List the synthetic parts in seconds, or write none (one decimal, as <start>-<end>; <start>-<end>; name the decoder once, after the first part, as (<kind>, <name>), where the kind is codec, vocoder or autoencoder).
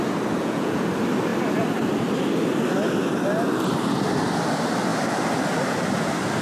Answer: 0.4-0.9 (vocoder, Vocos)